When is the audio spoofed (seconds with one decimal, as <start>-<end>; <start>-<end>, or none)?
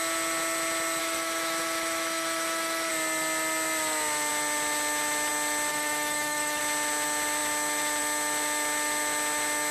1.0-2.9; 5.7-6.6